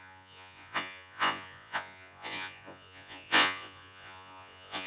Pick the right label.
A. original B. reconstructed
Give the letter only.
B